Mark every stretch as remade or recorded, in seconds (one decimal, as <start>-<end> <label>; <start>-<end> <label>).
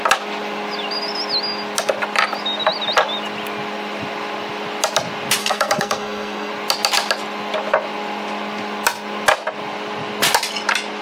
0.0-5.4 recorded; 5.4-6.5 remade; 6.5-11.0 recorded